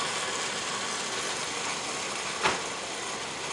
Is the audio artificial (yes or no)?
no